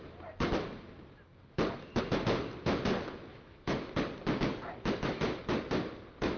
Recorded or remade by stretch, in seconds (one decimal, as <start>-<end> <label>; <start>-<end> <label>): 0.0-3.3 recorded; 3.3-3.9 remade; 3.9-4.8 recorded; 4.8-5.4 remade; 5.4-6.4 recorded